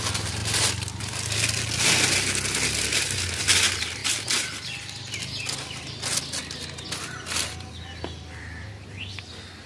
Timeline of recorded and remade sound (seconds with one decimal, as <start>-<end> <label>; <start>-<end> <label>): 0.0-9.7 recorded